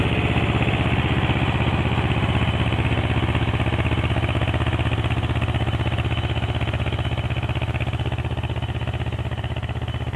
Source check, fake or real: real